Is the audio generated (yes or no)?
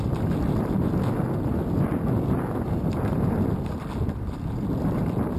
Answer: no